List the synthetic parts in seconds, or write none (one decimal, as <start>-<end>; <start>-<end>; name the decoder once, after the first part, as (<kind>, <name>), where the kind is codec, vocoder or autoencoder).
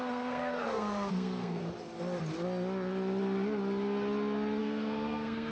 0.0-1.6 (codec, SNAC); 4.6-5.5